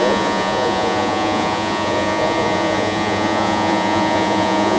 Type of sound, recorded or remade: remade